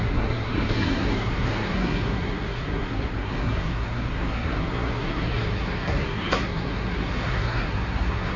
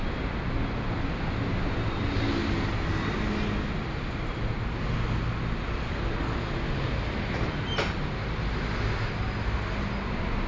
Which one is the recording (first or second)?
second